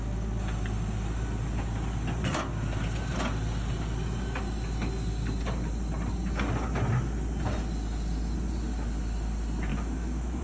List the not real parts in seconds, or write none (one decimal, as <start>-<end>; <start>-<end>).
9.7-10.4